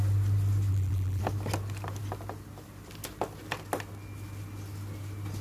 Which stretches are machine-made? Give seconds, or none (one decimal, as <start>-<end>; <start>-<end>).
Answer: 0.7-1.2